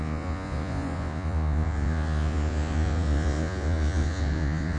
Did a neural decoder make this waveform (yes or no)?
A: yes